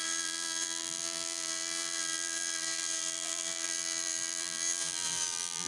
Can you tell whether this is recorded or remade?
remade